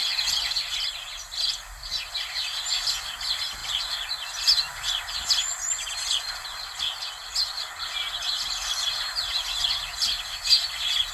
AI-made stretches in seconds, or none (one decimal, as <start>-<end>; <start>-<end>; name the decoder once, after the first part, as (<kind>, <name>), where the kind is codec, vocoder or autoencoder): none